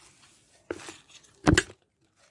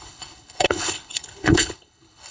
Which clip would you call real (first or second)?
first